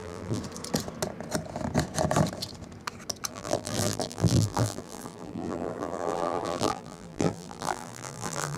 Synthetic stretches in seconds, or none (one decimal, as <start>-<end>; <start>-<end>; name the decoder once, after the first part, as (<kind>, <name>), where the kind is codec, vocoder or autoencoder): 0.0-0.4 (vocoder, BigVGAN v2); 3.3-8.6